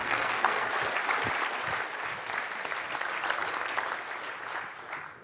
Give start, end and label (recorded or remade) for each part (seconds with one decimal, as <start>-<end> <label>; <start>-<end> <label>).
0.0-0.7 remade; 0.7-5.2 recorded